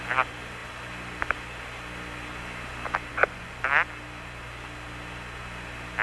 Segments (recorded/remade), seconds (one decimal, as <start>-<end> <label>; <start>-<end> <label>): 0.0-3.1 recorded; 3.1-3.6 remade; 3.6-6.0 recorded